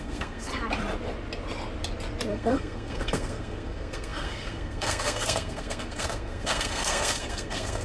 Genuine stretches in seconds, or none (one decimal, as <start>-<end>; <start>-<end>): 0.5-2.3

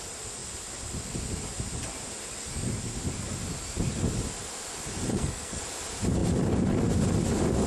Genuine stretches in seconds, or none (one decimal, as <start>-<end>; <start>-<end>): 0.0-5.1; 5.6-7.7

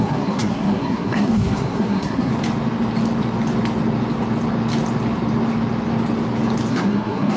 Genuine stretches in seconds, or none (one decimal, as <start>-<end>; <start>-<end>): 2.3-6.7

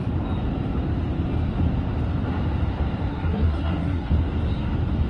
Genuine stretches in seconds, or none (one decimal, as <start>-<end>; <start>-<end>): 0.0-3.1; 4.1-5.1

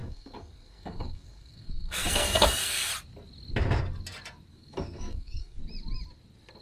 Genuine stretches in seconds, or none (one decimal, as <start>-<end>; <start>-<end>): 2.9-4.5; 5.6-6.6

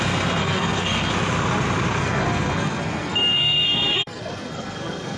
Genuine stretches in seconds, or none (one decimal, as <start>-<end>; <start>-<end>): 0.0-0.4; 1.1-2.0

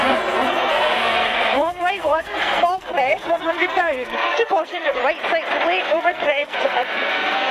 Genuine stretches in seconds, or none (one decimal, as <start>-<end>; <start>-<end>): 5.0-5.8

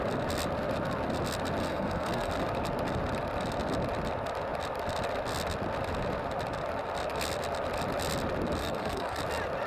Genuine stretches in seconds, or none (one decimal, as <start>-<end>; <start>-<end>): 0.0-1.6; 2.3-8.6; 9.2-9.7